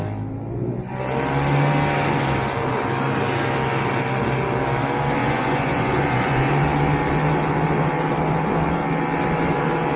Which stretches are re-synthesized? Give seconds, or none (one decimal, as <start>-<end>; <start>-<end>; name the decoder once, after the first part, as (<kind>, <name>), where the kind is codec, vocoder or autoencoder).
5.2-6.5 (vocoder, Vocos)